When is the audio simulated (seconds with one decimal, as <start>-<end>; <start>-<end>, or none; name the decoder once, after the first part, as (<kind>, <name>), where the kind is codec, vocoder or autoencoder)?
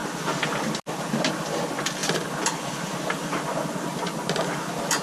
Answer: none